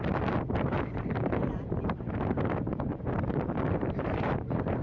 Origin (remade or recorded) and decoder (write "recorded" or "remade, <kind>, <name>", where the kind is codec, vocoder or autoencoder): remade, vocoder, BigVGAN v2